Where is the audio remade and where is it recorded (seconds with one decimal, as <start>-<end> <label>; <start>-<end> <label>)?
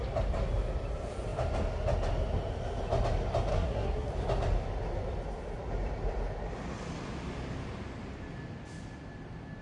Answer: 0.0-3.5 recorded; 3.5-4.1 remade; 4.1-9.6 recorded